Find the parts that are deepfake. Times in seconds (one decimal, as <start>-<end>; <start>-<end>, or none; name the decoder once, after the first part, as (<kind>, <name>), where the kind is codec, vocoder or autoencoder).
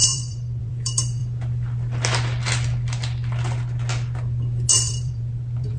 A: 0.0-1.2 (vocoder, BigVGAN v2); 4.7-5.8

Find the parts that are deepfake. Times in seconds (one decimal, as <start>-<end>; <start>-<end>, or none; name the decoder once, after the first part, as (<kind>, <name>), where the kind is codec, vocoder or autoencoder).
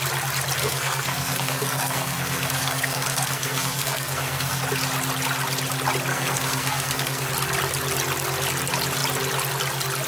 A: 0.6-4.6 (codec, SNAC); 6.1-7.3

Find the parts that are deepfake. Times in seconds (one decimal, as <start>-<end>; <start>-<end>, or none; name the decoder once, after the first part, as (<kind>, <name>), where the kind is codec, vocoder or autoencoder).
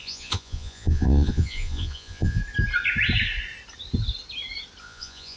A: 0.0-2.4 (vocoder, Vocos); 4.8-5.4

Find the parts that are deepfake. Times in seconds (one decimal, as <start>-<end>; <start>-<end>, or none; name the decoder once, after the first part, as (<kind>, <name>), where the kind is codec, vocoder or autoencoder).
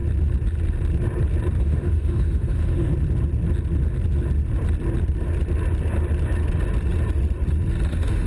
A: 1.6-2.9 (autoencoder, DAC-VAE); 7.9-8.3